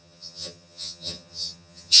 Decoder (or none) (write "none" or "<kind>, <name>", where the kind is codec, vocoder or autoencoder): vocoder, HiFi-GAN